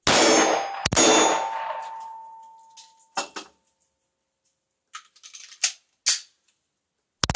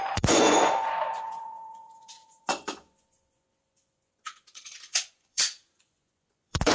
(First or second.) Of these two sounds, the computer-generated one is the second